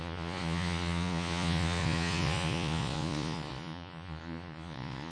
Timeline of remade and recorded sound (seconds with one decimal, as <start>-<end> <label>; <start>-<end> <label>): 0.0-5.1 remade